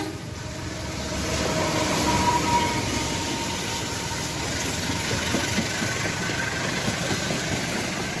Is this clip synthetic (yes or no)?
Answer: no